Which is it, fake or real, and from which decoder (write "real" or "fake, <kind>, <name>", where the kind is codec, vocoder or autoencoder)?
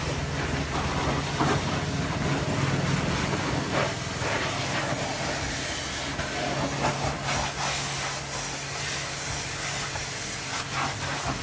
real